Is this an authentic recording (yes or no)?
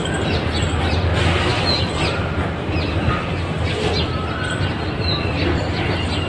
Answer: yes